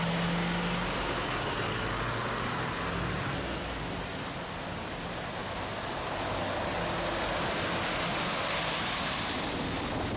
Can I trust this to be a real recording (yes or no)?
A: yes